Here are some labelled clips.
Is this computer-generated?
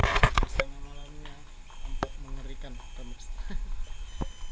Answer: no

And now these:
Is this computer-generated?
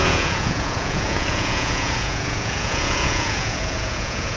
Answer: yes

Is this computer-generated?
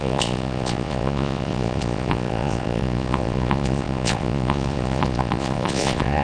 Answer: yes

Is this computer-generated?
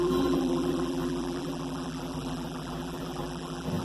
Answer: yes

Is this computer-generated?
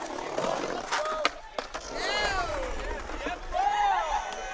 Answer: no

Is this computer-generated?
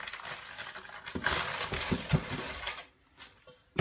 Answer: yes